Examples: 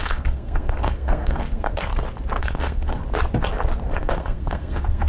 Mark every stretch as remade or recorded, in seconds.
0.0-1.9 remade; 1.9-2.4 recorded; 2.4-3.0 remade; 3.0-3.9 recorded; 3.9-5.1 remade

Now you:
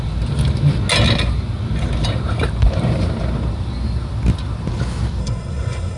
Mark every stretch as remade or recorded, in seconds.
0.0-5.2 recorded; 5.2-6.0 remade

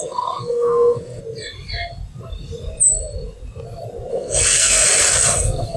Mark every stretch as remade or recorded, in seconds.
0.0-1.2 remade; 1.2-4.1 recorded; 4.1-5.8 remade

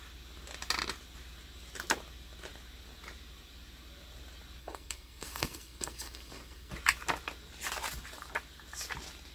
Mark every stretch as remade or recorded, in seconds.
0.0-4.6 recorded; 4.6-6.7 remade; 6.7-9.3 recorded

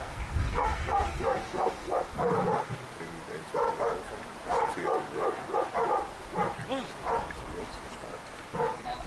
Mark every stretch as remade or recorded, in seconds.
0.0-2.8 remade; 2.8-8.1 recorded; 8.1-9.1 remade